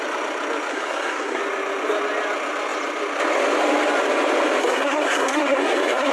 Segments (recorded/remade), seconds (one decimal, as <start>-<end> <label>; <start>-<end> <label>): 0.0-0.7 recorded; 0.7-1.4 remade; 1.4-4.6 recorded; 4.6-6.1 remade